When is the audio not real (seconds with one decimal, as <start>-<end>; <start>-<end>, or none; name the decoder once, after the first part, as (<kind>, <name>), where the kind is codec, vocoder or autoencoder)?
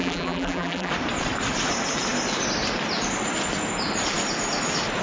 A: 0.0-0.9 (vocoder, BigVGAN v2)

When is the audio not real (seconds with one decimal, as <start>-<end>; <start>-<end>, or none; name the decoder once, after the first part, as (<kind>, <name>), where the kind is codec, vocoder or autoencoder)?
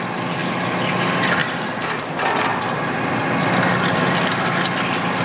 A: none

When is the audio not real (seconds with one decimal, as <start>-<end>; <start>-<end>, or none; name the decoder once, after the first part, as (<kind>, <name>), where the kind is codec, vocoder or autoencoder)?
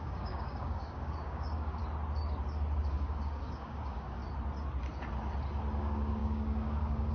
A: 0.0-1.8 (codec, DAC); 2.9-4.2; 5.8-7.1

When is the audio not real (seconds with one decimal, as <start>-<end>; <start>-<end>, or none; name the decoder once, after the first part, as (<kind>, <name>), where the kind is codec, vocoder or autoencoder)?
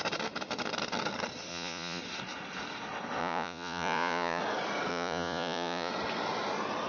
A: 1.5-2.0 (vocoder, Vocos); 3.2-4.4; 4.9-5.9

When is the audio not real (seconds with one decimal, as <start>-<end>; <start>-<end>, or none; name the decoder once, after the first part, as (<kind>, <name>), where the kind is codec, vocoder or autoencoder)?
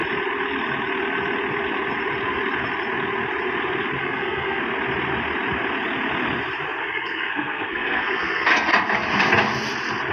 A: 4.0-4.6 (codec, SNAC); 6.8-8.7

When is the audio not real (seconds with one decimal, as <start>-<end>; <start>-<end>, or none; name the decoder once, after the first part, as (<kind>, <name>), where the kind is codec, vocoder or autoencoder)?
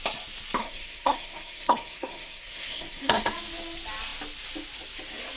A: 0.6-3.3 (codec, SNAC)